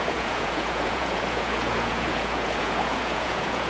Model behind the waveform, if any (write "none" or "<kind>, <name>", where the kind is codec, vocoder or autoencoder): vocoder, Vocos